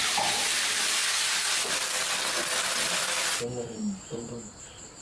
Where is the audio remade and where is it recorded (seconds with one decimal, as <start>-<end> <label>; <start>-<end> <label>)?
0.0-1.0 remade; 1.0-4.0 recorded; 4.0-5.0 remade